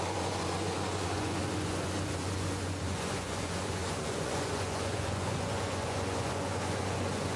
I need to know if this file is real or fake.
fake